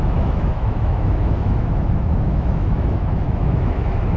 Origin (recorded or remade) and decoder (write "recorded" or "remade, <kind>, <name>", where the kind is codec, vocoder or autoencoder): remade, autoencoder, DAC-VAE